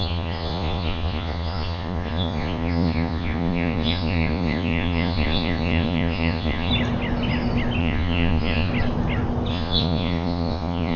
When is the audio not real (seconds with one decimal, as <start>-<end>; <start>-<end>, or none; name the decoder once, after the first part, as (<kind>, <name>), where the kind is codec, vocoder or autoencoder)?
0.0-6.7 (vocoder, Vocos); 7.8-8.7; 9.5-11.0